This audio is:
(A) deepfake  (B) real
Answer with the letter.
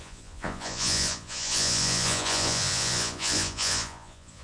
A